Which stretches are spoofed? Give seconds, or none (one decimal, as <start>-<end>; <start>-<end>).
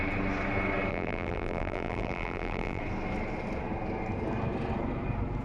0.9-2.8